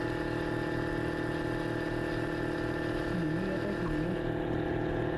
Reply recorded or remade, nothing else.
recorded